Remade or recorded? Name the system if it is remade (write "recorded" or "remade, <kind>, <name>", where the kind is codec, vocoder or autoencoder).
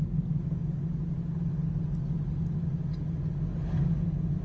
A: recorded